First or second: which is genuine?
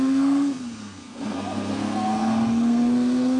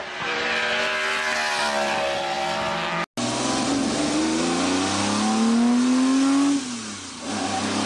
second